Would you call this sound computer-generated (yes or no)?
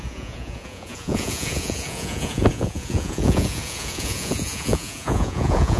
yes